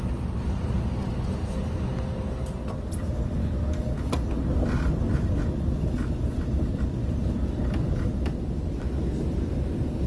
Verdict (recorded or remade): recorded